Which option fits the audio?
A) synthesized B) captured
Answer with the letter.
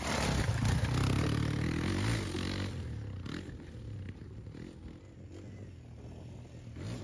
B